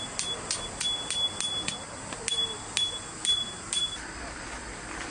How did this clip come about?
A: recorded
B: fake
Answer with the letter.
A